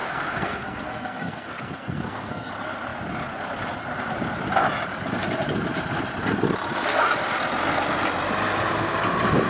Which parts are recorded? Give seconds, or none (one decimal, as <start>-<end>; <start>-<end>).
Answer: 2.5-9.5